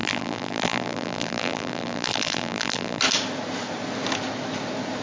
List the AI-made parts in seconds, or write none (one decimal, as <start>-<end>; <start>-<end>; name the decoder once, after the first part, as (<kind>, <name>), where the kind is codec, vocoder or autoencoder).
0.0-3.0 (vocoder, BigVGAN v2)